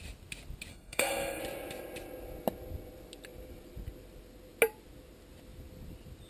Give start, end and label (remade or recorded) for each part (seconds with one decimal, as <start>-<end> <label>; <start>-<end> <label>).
0.0-0.7 recorded; 0.7-1.4 remade; 1.4-6.3 recorded